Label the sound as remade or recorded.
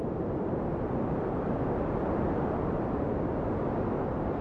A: remade